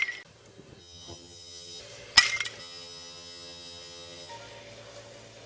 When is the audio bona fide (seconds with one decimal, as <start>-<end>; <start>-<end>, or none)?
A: 0.0-0.8; 1.8-2.6; 4.3-5.5